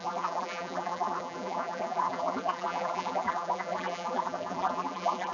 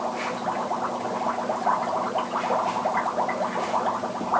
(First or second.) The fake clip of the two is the first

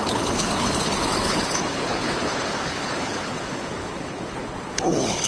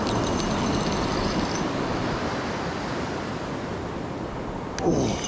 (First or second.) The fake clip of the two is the first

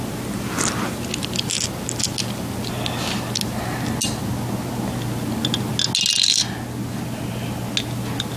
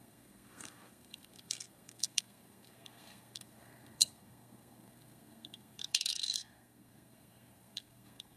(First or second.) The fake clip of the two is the second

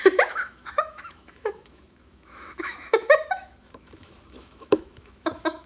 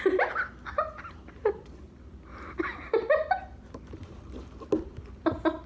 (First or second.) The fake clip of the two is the first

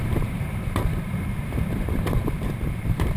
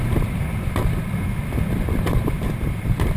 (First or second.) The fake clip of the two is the first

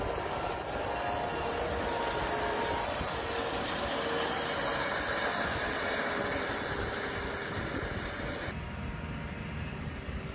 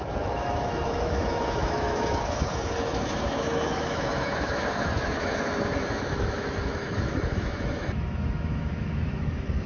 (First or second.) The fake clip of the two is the second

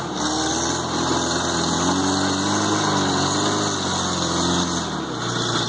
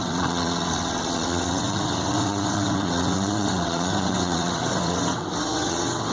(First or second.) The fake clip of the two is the second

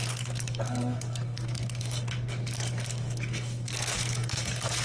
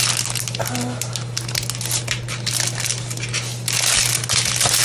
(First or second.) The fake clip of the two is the first